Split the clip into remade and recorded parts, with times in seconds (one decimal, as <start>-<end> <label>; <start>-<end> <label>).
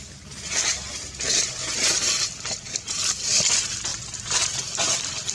0.0-5.3 recorded